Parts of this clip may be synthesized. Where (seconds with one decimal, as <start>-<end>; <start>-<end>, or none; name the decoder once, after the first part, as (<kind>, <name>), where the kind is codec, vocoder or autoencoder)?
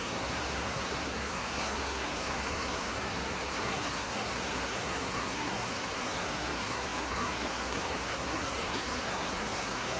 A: 0.0-10.0 (codec, SNAC)